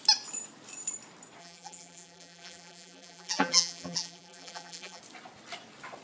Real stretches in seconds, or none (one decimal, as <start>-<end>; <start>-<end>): 0.0-1.4; 5.0-6.0